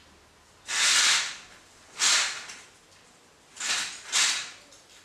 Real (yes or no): yes